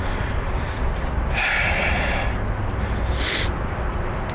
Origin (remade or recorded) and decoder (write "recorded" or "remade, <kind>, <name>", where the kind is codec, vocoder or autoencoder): recorded